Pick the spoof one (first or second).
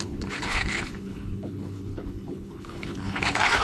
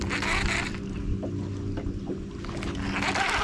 first